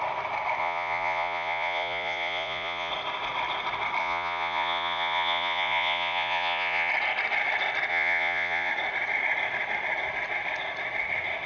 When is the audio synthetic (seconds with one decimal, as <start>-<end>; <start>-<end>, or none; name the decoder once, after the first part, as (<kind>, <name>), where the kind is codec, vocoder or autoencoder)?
0.6-2.9 (vocoder, Vocos); 4.0-6.9; 7.9-8.7